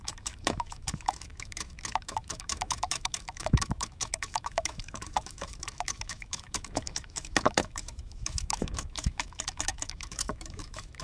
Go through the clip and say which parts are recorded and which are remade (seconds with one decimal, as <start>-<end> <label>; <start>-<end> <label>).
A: 0.0-11.0 remade